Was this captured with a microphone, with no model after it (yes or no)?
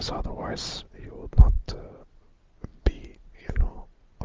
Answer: yes